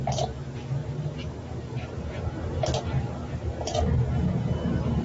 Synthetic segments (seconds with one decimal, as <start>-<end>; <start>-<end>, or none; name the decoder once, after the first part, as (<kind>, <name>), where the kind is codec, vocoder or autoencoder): 0.8-2.5 (vocoder, BigVGAN v2)